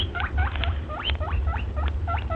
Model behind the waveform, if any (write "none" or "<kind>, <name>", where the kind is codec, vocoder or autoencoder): vocoder, BigVGAN v2